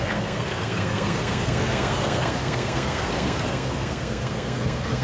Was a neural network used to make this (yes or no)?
yes